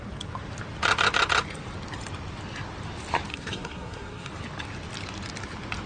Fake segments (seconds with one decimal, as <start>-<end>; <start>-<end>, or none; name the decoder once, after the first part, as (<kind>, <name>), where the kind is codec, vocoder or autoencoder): 3.3-4.3 (codec, SNAC)